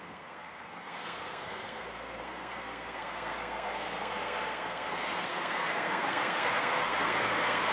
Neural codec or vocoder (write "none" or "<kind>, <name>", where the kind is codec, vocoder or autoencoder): codec, SNAC